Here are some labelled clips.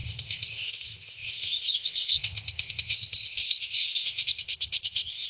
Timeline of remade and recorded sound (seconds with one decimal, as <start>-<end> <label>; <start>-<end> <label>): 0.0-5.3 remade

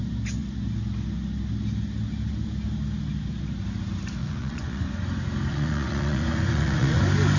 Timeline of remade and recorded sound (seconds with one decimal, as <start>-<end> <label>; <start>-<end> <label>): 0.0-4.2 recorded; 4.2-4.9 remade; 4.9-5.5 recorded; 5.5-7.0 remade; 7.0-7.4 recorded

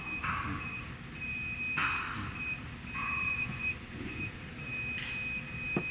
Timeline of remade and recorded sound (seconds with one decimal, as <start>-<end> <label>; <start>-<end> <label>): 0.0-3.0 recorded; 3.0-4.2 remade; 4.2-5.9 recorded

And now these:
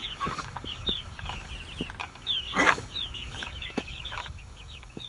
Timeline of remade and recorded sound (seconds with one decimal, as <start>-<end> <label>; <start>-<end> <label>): 0.0-1.5 remade; 1.5-2.0 recorded; 2.0-5.1 remade